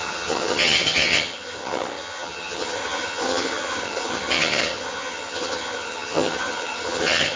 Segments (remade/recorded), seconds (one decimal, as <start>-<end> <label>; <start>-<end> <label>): 0.0-7.4 remade